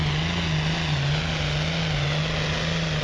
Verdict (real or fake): real